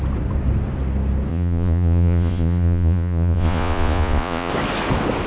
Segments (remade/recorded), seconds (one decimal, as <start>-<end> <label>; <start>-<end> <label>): 0.0-1.3 recorded; 1.3-4.5 remade; 4.5-5.3 recorded

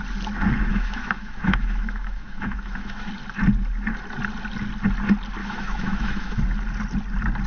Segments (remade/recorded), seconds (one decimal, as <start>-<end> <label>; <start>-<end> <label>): 0.0-0.7 recorded; 0.7-3.1 remade; 3.1-5.4 recorded; 5.4-6.4 remade; 6.4-7.5 recorded